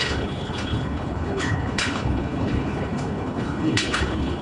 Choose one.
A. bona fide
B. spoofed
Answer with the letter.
B